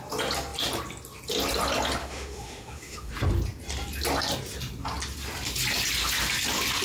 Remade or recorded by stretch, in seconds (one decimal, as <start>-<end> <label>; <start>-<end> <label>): 0.0-2.0 recorded; 2.0-3.1 remade; 3.1-6.8 recorded